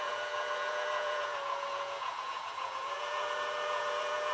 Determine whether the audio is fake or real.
fake